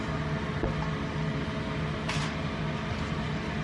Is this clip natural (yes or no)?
yes